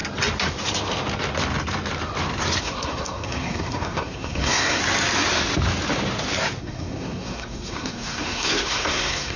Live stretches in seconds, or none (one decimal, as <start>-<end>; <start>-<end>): 0.0-2.6; 4.8-6.6